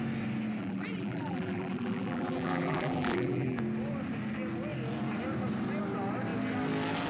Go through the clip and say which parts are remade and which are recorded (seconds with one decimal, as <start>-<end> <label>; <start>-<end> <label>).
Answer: 0.0-0.6 recorded; 0.6-3.6 remade; 3.6-7.1 recorded